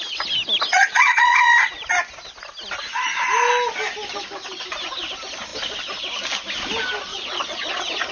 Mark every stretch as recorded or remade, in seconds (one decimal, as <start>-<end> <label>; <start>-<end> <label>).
0.0-0.7 recorded; 0.7-1.5 remade; 1.5-7.1 recorded; 7.1-8.1 remade